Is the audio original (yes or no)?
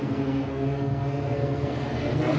no